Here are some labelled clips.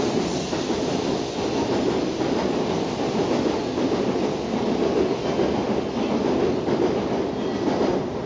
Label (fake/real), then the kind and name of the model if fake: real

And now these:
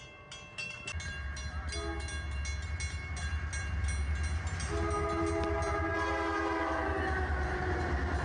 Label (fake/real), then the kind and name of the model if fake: real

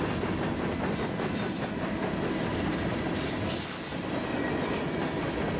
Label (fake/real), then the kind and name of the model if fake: real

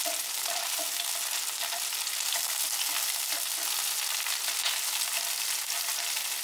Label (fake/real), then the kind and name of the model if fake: real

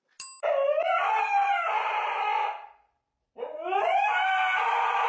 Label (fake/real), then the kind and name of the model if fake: real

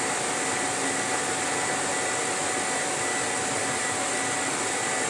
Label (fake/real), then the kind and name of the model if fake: real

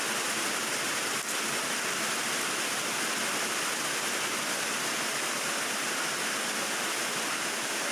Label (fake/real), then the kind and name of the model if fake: real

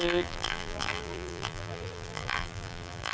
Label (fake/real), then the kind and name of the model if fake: fake, vocoder, BigVGAN v2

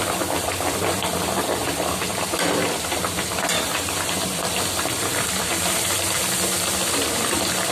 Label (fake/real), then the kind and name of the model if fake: fake, vocoder, BigVGAN v2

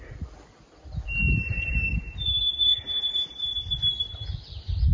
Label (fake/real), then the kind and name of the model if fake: fake, vocoder, BigVGAN v2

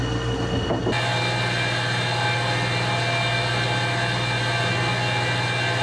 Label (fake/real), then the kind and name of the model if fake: real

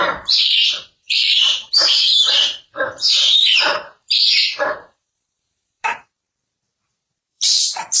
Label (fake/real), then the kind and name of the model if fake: fake, vocoder, BigVGAN v2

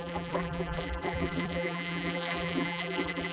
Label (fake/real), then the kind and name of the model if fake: fake, vocoder, BigVGAN v2